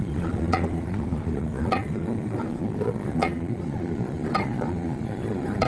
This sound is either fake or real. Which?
fake